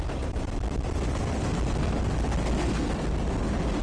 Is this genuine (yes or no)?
yes